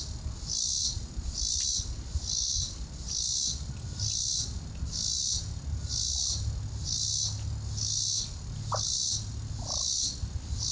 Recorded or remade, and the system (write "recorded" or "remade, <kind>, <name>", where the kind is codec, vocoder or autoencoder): recorded